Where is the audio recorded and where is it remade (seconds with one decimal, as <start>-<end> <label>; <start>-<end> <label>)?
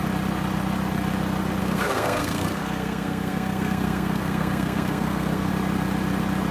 0.0-1.6 recorded; 1.6-5.5 remade; 5.5-6.5 recorded